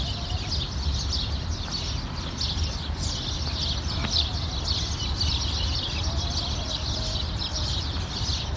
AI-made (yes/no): no